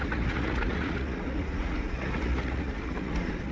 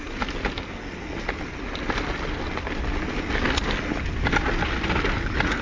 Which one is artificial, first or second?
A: first